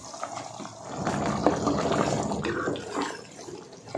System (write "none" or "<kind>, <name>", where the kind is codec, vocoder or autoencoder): none